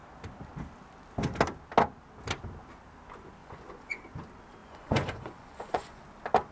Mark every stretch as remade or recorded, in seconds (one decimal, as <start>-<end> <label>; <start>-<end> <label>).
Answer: 0.0-3.4 recorded; 3.4-4.0 remade; 4.0-4.6 recorded; 4.6-6.0 remade; 6.0-6.5 recorded